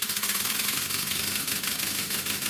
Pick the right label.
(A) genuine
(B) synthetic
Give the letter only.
B